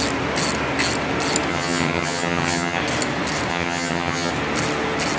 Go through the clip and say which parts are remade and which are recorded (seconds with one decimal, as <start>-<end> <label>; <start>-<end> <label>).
0.0-1.5 recorded; 1.5-2.8 remade; 2.8-3.5 recorded; 3.5-4.3 remade; 4.3-5.2 recorded